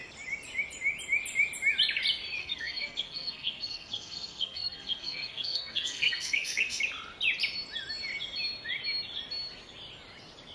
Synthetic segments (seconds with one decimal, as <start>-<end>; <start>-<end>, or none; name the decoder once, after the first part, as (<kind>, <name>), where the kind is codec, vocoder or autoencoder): 2.4-6.8 (codec, SNAC)